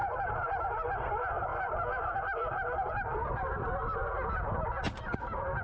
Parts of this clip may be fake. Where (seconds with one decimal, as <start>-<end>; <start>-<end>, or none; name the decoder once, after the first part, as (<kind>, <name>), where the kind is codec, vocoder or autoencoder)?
0.0-1.0 (vocoder, BigVGAN v2); 1.5-2.9